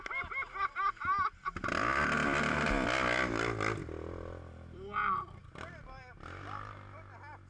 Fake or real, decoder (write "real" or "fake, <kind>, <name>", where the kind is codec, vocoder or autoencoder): real